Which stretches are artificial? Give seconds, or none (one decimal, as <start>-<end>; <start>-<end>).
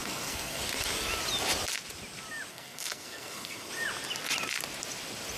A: 0.0-0.6; 2.5-3.7